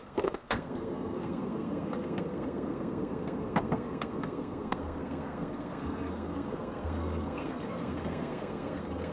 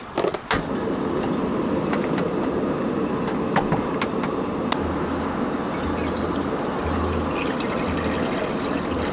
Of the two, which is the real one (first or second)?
second